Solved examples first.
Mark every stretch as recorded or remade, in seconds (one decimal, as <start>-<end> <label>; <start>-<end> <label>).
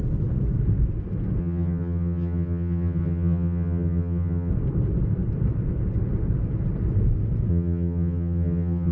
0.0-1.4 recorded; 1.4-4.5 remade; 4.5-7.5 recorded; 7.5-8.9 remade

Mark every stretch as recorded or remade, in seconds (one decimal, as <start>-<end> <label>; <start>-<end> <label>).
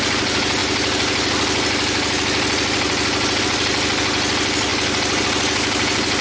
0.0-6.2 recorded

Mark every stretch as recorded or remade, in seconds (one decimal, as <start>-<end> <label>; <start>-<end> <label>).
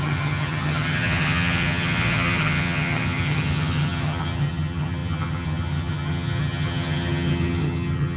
0.0-8.2 remade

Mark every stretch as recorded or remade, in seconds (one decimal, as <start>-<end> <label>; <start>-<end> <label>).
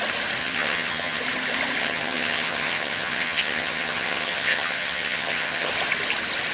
0.0-0.4 recorded; 0.4-1.2 remade; 1.2-1.8 recorded; 1.8-5.7 remade; 5.7-6.5 recorded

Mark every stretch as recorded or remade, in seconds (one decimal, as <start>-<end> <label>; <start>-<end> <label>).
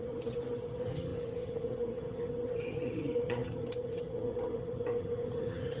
0.0-5.8 remade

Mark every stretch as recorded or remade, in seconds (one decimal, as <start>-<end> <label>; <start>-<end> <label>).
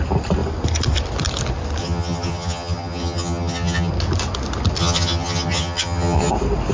0.0-1.8 recorded; 1.8-3.9 remade; 3.9-4.8 recorded; 4.8-6.3 remade; 6.3-6.7 recorded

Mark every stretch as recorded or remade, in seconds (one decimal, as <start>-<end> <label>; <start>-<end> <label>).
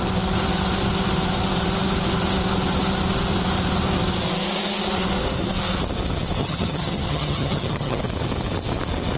0.0-6.4 recorded; 6.4-8.0 remade; 8.0-9.2 recorded